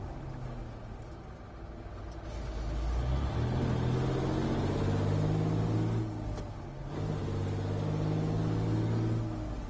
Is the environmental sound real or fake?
real